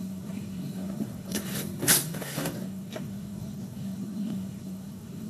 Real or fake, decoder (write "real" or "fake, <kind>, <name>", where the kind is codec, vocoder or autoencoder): fake, codec, SNAC